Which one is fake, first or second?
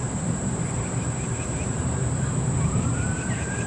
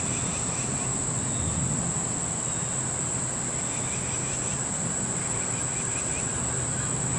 first